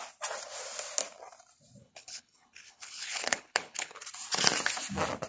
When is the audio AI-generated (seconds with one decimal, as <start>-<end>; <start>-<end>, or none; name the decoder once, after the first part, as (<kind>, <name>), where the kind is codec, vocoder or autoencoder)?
1.8-4.0 (codec, HILCodec)